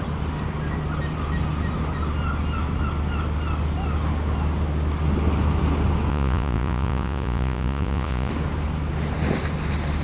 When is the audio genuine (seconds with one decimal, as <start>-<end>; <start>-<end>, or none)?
0.0-6.1; 8.3-10.0